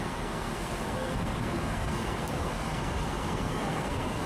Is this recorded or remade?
remade